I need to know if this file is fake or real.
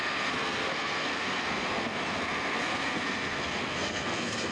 fake